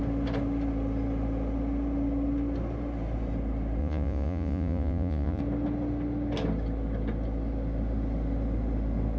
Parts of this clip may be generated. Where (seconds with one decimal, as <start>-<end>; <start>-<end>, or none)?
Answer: 3.8-5.4